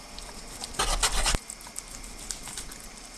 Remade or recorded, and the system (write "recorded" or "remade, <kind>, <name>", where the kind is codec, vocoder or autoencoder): recorded